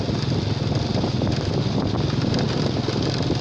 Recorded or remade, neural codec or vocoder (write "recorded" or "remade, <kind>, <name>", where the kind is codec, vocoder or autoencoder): recorded